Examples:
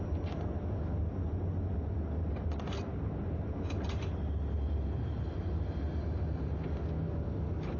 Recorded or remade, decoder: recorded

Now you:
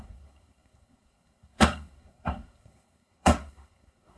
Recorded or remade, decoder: remade, codec, SNAC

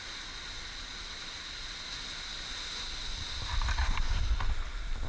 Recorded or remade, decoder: recorded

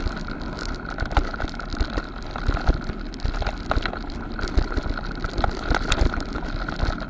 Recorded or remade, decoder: recorded